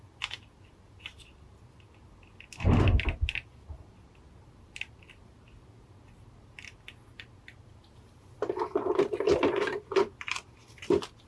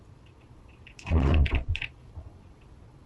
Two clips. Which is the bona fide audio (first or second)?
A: first